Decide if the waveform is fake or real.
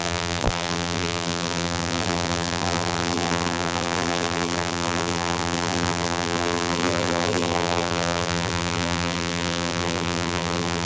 fake